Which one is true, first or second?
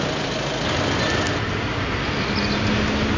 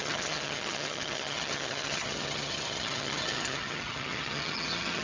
first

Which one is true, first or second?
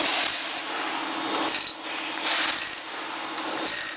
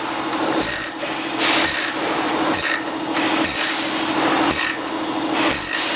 first